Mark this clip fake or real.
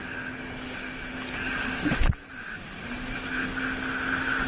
real